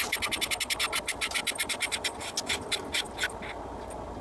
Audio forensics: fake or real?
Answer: real